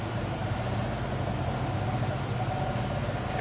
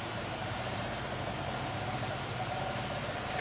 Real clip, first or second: first